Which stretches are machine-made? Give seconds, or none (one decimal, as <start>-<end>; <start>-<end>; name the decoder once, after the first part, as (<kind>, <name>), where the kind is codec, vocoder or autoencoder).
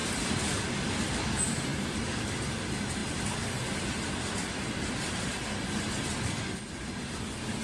none